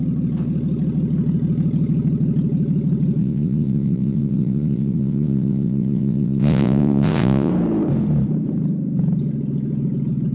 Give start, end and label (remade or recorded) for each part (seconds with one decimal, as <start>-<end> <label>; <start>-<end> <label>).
0.0-3.2 recorded; 3.2-7.5 remade; 7.5-10.3 recorded